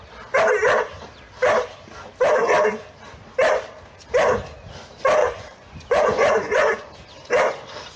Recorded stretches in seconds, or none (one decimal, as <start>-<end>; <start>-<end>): 0.0-5.2; 6.9-8.0